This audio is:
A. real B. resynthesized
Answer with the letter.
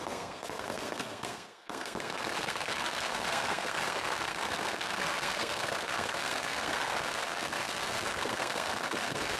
B